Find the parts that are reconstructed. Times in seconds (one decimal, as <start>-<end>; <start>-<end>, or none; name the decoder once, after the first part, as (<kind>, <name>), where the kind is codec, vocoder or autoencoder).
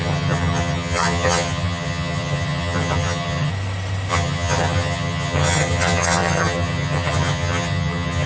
0.0-3.5 (vocoder, HiFi-GAN); 4.1-8.3